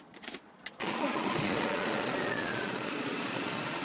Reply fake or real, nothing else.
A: fake